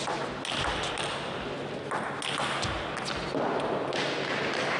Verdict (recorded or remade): recorded